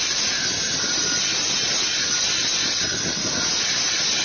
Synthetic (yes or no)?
no